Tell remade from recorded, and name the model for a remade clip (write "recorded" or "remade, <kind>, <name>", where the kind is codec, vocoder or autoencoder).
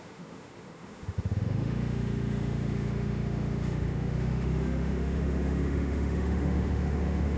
remade, autoencoder, DAC-VAE